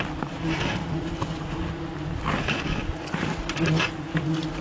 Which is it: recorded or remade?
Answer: recorded